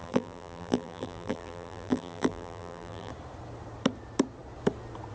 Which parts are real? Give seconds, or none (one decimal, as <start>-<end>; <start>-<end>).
3.1-5.1